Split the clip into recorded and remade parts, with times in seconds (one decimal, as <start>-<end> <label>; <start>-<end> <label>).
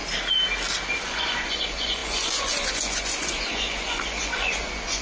0.0-1.0 recorded; 1.0-5.0 remade